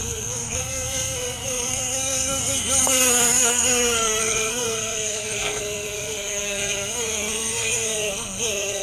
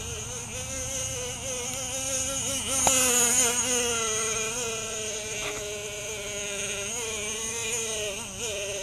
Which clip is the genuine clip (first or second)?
second